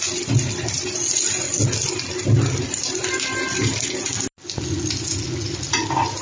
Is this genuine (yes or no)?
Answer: yes